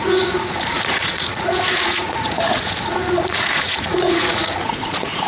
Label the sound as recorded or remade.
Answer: remade